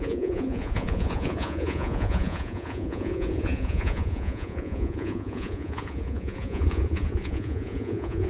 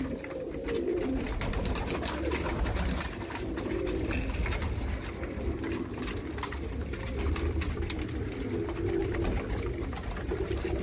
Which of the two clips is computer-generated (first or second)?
first